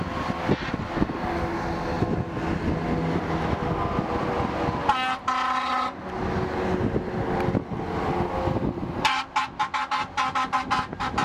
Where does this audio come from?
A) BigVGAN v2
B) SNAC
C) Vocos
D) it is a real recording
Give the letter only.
D